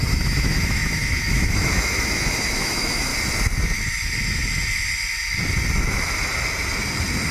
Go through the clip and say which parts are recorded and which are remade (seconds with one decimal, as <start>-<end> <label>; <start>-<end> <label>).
0.0-3.1 remade; 3.1-7.3 recorded